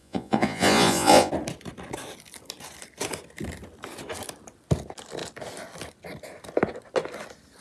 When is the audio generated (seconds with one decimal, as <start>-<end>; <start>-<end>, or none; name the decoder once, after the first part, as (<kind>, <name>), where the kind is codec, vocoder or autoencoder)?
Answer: 0.0-1.3 (vocoder, Vocos)